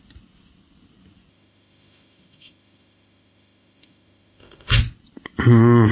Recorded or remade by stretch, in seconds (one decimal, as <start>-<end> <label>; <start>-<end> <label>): 0.0-1.3 recorded; 1.3-4.8 remade; 4.8-5.9 recorded